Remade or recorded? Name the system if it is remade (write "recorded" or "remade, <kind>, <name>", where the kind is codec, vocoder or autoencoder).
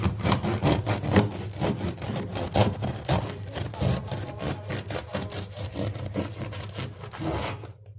recorded